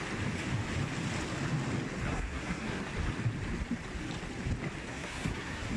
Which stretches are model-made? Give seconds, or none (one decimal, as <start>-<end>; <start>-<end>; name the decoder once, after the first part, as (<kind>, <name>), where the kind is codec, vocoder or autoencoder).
2.1-2.8 (codec, SNAC); 4.8-5.8